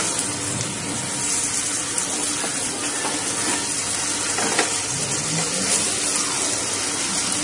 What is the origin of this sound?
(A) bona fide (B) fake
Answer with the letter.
A